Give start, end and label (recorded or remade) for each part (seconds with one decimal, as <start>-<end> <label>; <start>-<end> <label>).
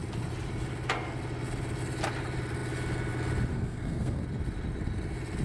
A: 0.0-3.5 recorded; 3.5-4.2 remade; 4.2-5.4 recorded